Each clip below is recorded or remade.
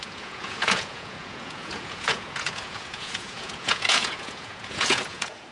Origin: remade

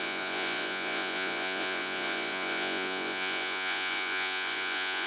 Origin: remade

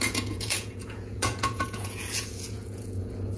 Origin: remade